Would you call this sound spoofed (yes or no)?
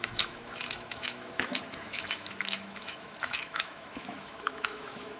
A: yes